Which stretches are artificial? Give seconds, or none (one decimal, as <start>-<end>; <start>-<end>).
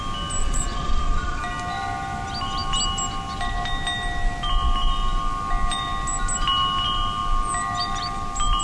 0.4-1.4